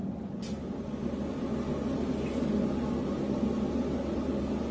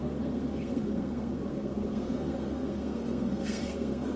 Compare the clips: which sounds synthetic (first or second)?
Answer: second